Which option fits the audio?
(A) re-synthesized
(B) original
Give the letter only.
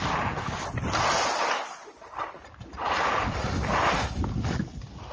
B